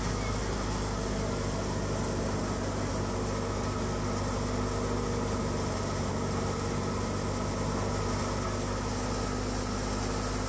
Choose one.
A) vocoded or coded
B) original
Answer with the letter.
B